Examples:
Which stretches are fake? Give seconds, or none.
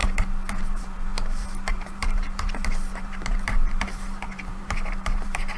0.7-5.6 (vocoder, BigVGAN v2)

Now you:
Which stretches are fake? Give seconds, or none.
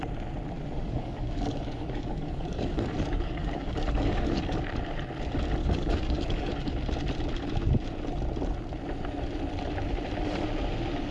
0.8-4.8 (codec, DAC); 5.6-6.5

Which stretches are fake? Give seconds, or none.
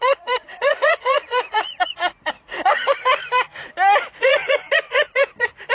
0.0-3.2 (vocoder, Vocos); 4.2-5.7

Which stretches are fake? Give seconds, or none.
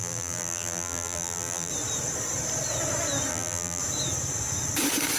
0.0-1.7 (vocoder, BigVGAN v2); 3.3-3.8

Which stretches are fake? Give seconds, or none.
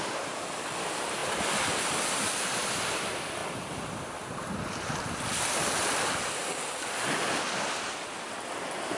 0.0-3.4 (vocoder, BigVGAN v2); 8.2-9.0